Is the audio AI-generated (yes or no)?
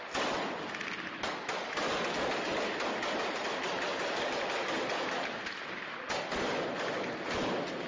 no